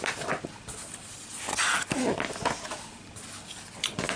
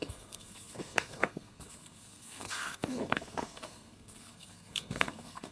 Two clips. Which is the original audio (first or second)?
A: first